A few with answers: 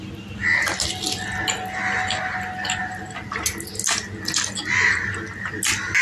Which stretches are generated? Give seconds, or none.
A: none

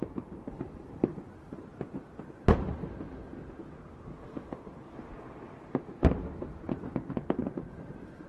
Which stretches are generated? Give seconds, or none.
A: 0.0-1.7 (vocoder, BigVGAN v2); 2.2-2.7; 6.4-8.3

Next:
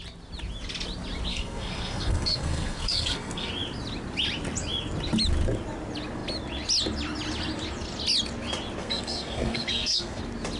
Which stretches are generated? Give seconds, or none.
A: 1.3-3.5 (codec, SNAC); 8.8-10.2